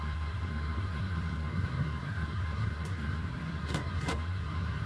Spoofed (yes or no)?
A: yes